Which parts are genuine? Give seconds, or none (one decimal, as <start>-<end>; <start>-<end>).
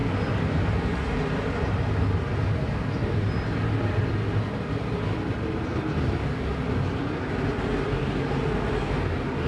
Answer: 0.0-9.5